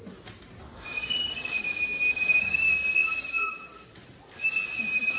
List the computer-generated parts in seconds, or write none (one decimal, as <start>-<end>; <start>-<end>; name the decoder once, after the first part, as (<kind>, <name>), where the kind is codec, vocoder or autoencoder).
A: 0.7-3.1 (codec, DAC)